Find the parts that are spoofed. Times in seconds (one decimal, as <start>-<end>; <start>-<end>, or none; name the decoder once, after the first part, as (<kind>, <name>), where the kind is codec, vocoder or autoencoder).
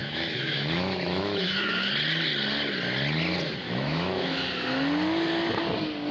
0.0-1.9 (autoencoder, DAC-VAE); 3.6-4.5